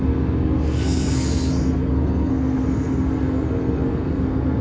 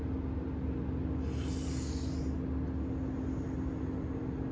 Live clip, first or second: second